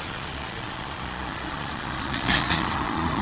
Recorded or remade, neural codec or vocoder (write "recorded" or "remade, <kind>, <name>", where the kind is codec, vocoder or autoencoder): remade, vocoder, Vocos